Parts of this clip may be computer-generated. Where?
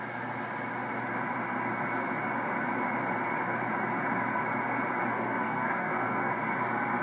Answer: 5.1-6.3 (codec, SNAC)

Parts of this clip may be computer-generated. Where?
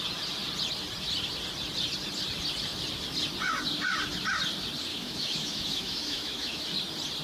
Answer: 4.9-6.6 (autoencoder, DAC-VAE)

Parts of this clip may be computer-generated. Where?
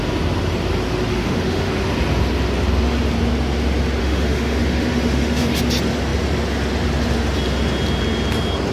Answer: 1.1-1.7 (autoencoder, DAC-VAE); 4.0-5.6